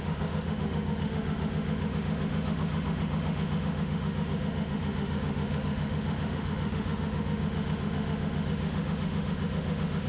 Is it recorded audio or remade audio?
remade